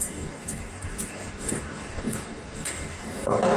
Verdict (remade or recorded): remade